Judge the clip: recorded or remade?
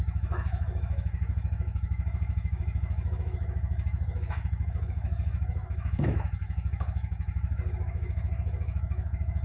remade